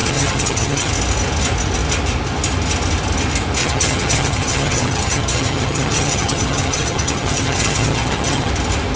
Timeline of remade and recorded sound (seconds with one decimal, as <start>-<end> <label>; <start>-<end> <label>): 0.0-0.9 remade; 0.9-3.6 recorded; 3.6-8.5 remade; 8.5-9.0 recorded